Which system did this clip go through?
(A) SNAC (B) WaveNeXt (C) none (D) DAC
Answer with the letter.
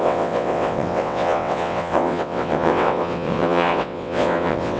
B